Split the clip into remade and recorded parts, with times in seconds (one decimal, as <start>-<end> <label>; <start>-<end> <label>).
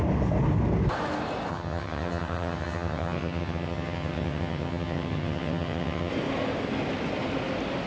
0.0-1.5 recorded; 1.5-6.1 remade; 6.1-7.9 recorded